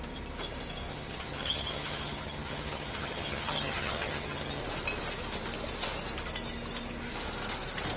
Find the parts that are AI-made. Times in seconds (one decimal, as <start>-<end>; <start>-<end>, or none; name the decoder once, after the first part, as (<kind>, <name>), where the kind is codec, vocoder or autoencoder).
0.9-4.6 (vocoder, HiFi-GAN)